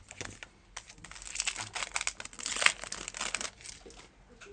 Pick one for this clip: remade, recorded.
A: recorded